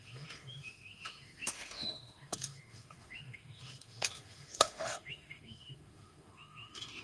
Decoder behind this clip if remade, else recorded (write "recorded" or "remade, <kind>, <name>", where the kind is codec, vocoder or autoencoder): remade, autoencoder, DAC-VAE